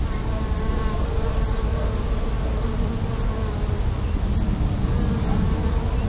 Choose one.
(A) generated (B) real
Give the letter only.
B